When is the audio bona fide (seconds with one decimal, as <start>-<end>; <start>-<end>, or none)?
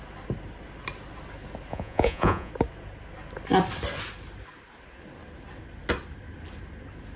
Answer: 0.0-1.7; 2.5-7.2